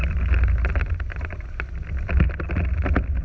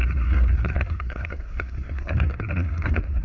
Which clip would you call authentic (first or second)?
first